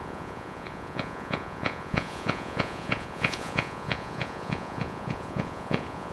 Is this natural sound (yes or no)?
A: no